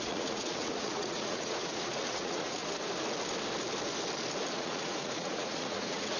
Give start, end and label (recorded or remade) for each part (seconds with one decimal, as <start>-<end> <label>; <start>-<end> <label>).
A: 0.0-2.6 remade; 2.6-4.5 recorded; 4.5-6.2 remade